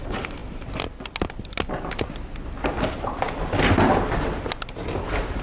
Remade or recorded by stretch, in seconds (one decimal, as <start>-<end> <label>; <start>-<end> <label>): 0.0-5.4 recorded